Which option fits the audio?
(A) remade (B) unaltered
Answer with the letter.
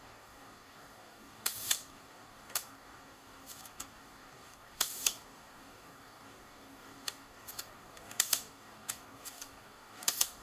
A